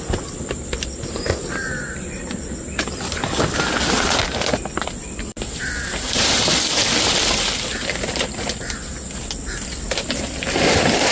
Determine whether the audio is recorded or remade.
recorded